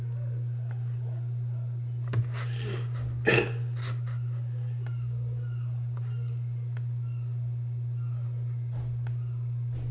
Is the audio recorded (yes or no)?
yes